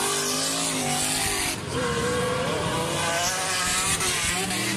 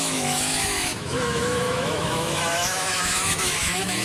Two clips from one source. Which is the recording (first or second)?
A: first